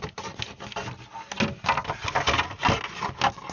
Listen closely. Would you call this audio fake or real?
real